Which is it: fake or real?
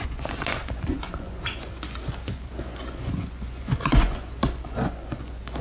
fake